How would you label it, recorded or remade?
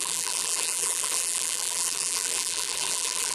remade